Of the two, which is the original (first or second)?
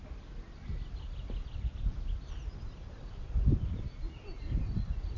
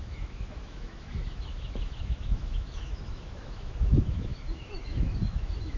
first